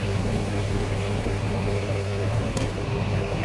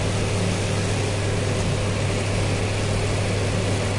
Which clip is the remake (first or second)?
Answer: first